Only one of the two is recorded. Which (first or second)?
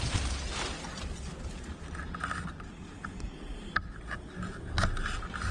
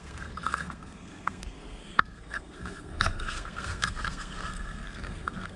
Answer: first